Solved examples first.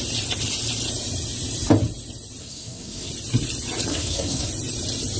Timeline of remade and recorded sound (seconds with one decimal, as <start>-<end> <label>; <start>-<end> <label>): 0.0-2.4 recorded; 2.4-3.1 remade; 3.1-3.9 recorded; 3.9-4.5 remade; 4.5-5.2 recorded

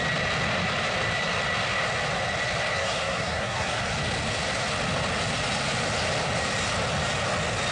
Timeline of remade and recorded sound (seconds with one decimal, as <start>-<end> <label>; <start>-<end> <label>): 0.0-2.8 recorded; 2.8-3.8 remade; 3.8-7.7 recorded

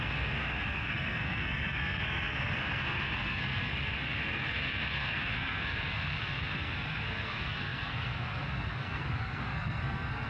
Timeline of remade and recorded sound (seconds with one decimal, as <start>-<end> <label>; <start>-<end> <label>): 0.0-10.3 remade

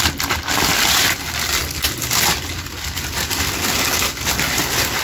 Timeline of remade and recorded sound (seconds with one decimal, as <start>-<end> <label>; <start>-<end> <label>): 0.0-5.0 recorded

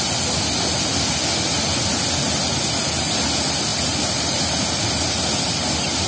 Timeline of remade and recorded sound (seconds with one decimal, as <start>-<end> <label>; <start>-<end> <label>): 0.0-6.1 recorded

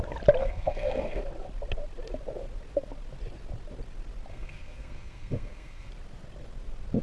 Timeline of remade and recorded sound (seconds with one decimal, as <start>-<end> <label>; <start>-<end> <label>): 0.0-0.4 recorded; 0.4-1.2 remade; 1.2-4.3 recorded; 4.3-5.9 remade; 5.9-7.0 recorded